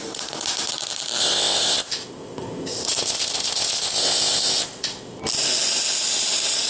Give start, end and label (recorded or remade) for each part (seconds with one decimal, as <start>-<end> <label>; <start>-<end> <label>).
0.0-1.2 recorded; 1.2-5.2 remade; 5.2-6.7 recorded